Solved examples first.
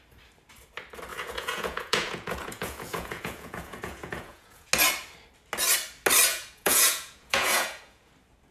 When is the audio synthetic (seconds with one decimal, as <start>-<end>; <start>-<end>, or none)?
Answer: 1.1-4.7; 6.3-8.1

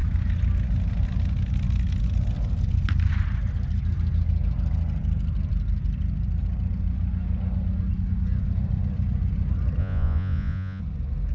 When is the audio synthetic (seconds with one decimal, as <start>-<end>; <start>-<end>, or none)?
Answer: 9.8-10.8

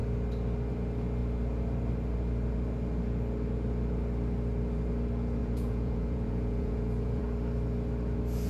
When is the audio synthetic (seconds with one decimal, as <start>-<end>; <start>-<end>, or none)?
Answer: 5.4-7.2